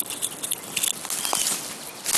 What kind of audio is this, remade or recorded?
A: recorded